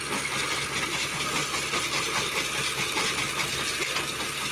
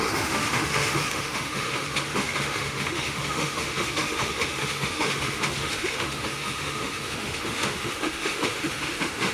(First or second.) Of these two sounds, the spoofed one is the second